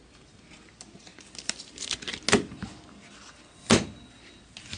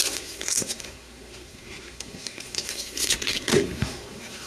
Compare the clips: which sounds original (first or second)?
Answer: first